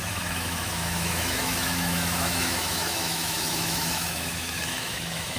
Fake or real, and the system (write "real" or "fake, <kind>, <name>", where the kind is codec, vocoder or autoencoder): fake, autoencoder, DAC-VAE